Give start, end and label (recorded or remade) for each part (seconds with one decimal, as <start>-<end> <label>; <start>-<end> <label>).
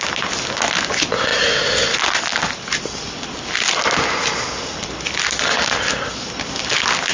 0.0-7.1 recorded